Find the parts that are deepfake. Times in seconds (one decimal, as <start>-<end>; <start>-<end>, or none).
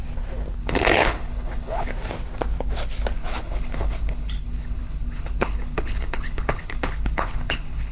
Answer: 0.6-1.9; 3.2-7.9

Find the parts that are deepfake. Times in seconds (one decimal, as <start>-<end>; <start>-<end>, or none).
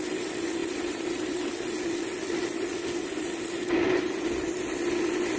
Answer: 0.6-1.5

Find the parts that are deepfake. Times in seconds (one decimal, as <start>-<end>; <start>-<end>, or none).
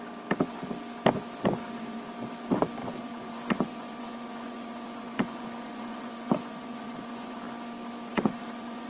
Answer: 2.8-7.4; 8.1-8.9